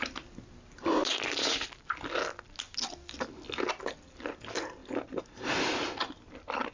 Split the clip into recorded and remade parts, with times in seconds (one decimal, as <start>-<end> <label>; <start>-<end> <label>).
0.0-6.7 recorded